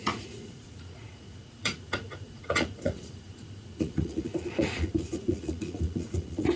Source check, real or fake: fake